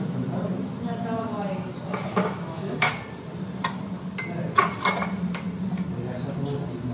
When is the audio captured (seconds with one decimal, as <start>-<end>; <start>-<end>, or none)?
0.0-2.1; 2.9-6.9